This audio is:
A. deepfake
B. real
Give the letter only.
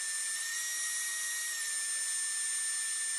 B